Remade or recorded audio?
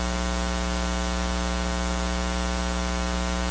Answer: recorded